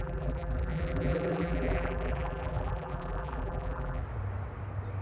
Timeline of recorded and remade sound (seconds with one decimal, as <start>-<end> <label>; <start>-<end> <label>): 0.0-4.0 remade; 4.0-5.0 recorded